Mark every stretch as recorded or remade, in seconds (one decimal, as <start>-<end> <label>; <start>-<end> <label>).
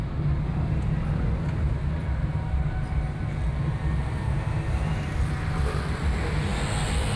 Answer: 0.0-7.2 recorded